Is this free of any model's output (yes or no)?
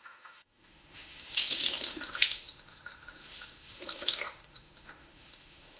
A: no